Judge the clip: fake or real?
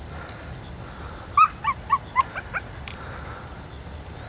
real